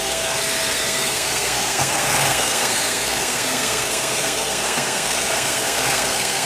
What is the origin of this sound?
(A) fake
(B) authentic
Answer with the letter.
A